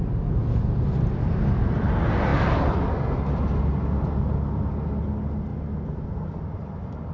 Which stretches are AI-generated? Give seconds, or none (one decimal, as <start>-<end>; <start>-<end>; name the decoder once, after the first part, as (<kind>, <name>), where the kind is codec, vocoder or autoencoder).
none